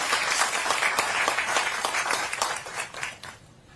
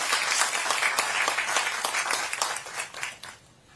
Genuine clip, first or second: second